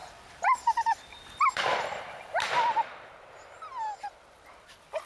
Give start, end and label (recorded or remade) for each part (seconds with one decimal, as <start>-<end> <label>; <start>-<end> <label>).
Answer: 0.0-3.1 remade; 3.1-5.1 recorded